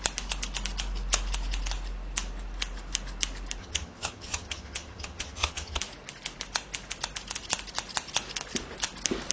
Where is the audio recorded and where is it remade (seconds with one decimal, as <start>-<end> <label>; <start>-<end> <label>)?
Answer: 0.0-3.6 recorded; 3.6-5.8 remade; 5.8-9.3 recorded

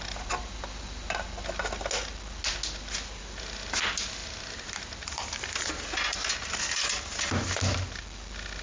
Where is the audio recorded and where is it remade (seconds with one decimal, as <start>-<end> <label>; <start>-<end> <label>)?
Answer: 0.0-8.6 recorded

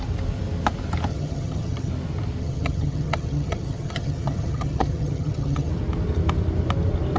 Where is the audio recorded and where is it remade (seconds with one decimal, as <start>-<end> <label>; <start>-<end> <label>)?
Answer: 0.0-1.1 recorded; 1.1-1.9 remade; 1.9-2.4 recorded; 2.4-5.7 remade; 5.7-7.2 recorded